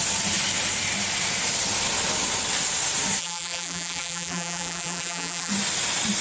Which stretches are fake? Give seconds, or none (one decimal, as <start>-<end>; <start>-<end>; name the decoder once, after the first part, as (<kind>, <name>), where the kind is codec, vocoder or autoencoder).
3.2-5.5 (vocoder, BigVGAN v2)